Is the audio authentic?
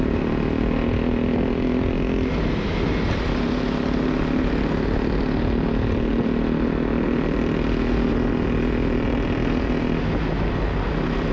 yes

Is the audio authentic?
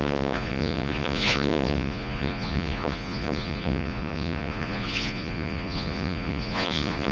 no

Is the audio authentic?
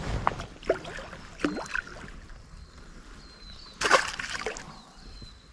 yes